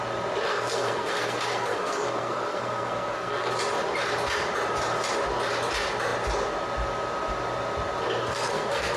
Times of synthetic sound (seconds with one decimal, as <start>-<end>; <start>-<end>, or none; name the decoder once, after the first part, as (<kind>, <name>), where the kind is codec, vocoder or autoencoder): 0.5-3.5 (codec, SNAC); 8.2-9.0